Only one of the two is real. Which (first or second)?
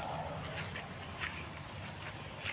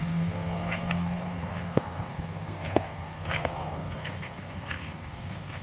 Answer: first